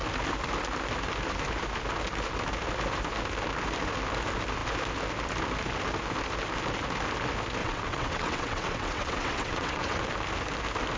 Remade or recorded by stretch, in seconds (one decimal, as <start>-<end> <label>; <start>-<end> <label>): 0.0-7.6 recorded; 7.6-10.0 remade; 10.0-11.0 recorded